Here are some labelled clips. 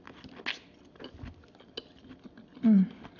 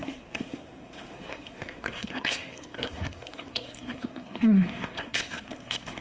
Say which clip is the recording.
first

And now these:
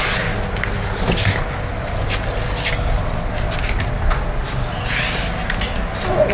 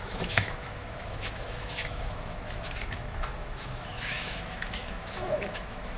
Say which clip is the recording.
first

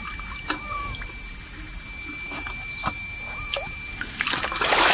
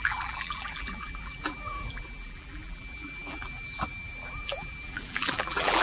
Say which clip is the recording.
first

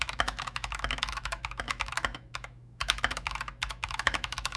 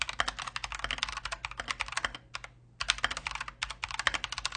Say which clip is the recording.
second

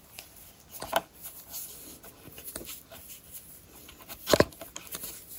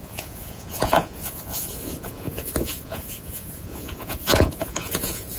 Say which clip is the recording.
first